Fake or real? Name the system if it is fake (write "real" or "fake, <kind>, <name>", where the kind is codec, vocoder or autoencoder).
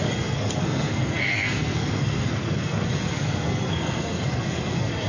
fake, codec, SNAC